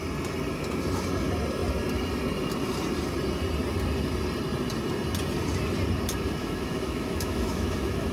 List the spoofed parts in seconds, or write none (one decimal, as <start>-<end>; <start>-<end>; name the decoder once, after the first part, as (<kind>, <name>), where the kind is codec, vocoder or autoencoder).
6.4-8.1 (autoencoder, DAC-VAE)